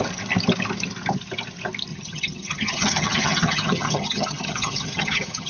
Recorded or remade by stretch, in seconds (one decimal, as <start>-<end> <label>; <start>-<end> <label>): 0.0-1.9 recorded; 1.9-5.5 remade